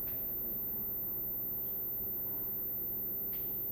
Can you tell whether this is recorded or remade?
recorded